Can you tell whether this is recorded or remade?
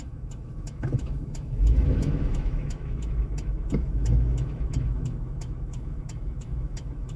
remade